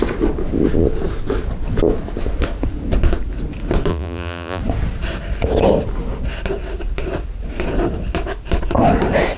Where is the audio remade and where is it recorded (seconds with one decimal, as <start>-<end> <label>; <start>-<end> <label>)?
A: 0.0-3.9 recorded; 3.9-4.6 remade; 4.6-9.4 recorded